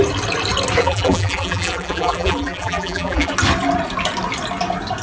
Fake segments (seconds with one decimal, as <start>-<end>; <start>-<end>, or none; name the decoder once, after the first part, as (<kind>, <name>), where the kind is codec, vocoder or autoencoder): 0.8-3.3 (vocoder, BigVGAN v2)